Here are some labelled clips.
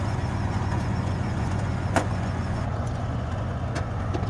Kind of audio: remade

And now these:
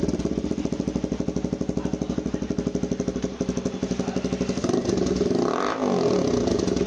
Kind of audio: recorded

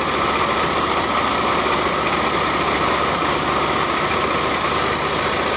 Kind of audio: recorded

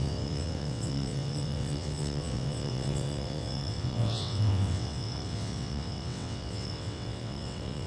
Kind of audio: remade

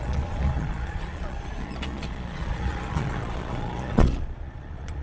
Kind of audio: remade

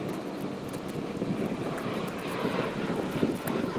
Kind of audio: recorded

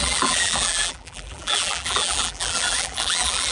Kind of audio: remade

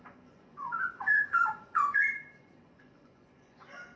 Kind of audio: remade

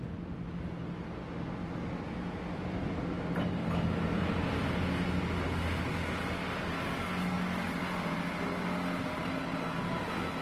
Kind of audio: recorded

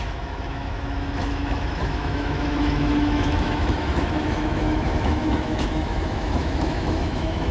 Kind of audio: remade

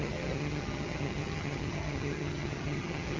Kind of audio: remade